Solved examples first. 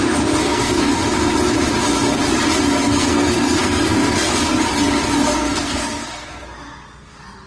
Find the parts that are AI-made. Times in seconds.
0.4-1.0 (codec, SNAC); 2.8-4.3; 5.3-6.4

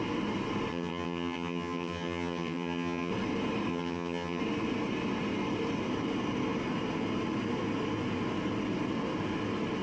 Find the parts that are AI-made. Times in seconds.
0.7-3.1 (vocoder, HiFi-GAN); 3.7-4.4

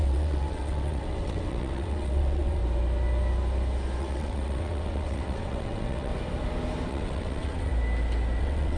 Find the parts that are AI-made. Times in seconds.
0.0-2.6 (vocoder, WaveNeXt); 4.0-6.1; 6.9-7.7; 8.4-8.8

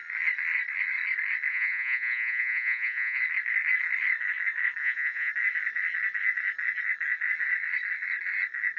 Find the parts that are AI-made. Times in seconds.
1.5-3.2 (vocoder, Vocos); 4.8-5.3

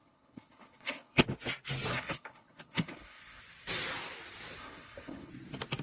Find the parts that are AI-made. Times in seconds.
0.0-1.2 (codec, HILCodec); 1.9-3.4; 4.6-5.3